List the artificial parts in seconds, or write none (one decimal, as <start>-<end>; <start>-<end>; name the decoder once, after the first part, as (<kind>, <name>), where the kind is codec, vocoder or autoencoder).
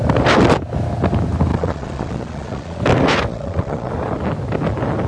1.5-2.8 (vocoder, Vocos); 3.3-3.9